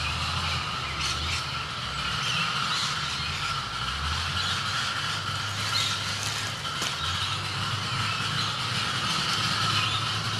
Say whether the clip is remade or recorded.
recorded